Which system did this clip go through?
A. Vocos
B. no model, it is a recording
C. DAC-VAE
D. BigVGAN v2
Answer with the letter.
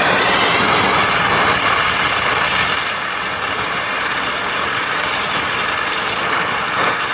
D